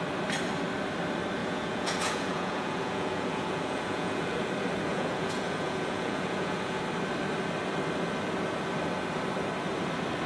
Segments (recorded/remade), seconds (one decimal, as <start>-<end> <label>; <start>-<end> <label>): 0.0-1.4 recorded; 1.4-4.5 remade; 4.5-4.9 recorded; 4.9-6.8 remade; 6.8-10.3 recorded